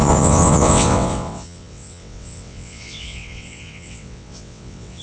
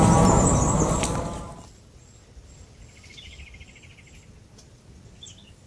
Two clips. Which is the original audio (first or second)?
second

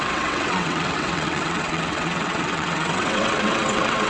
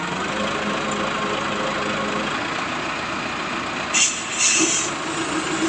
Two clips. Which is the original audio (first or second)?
second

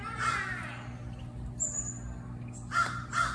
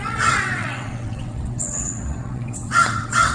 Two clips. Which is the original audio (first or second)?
first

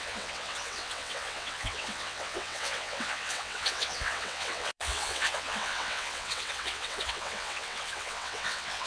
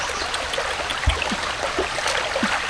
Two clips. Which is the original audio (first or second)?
second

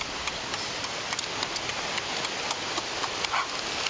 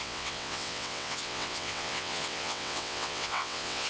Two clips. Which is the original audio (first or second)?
first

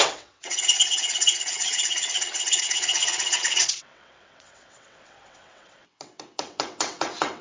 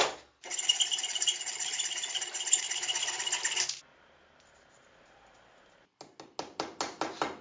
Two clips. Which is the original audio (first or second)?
second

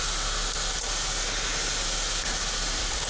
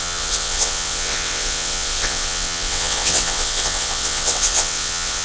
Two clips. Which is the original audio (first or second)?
first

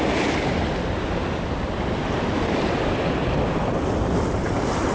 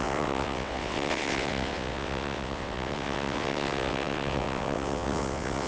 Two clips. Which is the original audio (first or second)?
first